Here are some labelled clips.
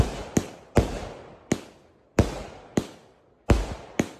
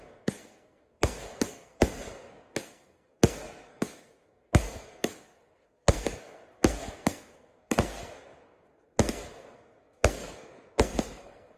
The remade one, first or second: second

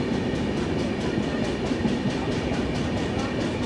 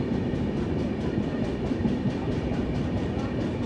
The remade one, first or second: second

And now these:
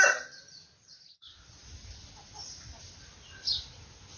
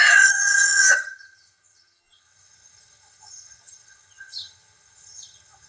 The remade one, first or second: second